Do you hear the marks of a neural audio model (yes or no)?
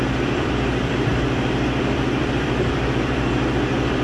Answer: yes